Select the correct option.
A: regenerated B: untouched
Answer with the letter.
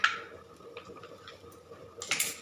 B